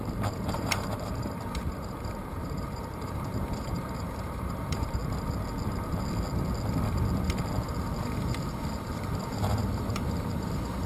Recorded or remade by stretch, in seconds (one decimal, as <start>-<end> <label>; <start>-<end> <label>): 0.0-5.0 remade; 5.0-9.3 recorded; 9.3-10.9 remade